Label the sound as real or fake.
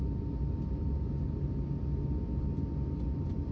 real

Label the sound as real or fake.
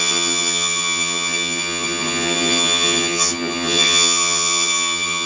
fake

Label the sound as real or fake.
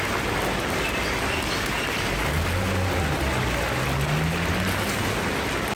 real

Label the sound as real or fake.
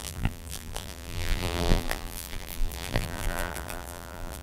fake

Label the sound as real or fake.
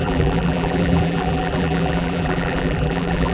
fake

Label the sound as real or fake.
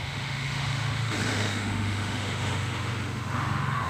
fake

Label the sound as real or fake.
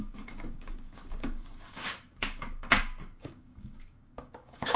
fake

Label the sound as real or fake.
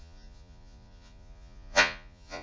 fake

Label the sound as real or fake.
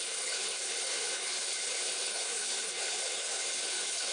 fake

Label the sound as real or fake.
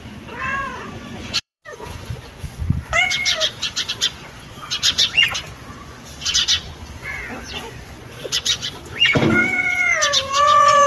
fake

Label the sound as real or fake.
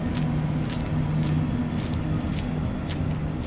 real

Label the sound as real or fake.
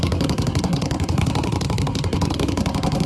fake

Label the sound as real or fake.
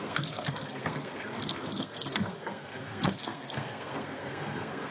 fake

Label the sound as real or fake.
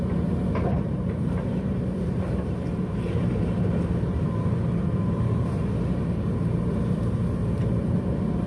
fake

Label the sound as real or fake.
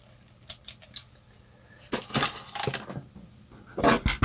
real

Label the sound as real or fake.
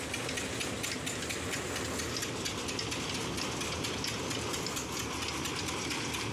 real